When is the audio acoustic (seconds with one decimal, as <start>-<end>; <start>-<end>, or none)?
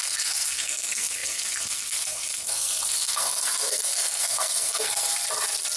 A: 5.1-5.8